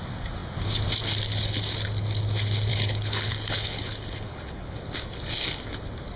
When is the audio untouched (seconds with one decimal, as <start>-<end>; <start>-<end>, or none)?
0.0-2.7; 4.8-6.2